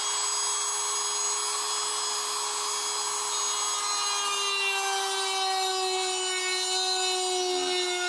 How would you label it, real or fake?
real